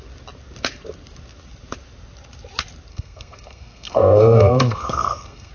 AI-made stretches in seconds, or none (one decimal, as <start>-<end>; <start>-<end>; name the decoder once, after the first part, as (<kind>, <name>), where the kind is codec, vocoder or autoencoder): 2.9-5.5 (codec, SNAC)